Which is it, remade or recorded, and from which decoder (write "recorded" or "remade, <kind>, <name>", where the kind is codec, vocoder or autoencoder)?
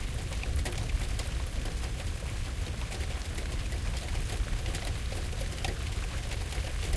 recorded